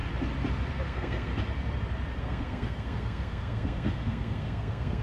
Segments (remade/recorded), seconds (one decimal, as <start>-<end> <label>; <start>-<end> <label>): 0.0-0.7 recorded; 0.7-1.3 remade; 1.3-2.2 recorded; 2.2-5.0 remade